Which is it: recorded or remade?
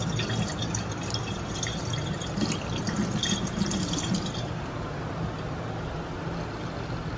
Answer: recorded